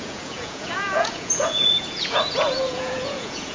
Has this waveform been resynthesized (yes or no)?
yes